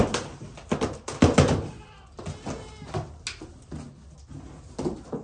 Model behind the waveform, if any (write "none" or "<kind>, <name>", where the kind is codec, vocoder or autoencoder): none